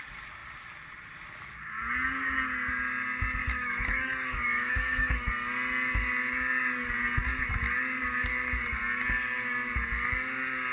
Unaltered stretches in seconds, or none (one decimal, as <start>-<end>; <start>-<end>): 0.0-3.4; 5.3-10.7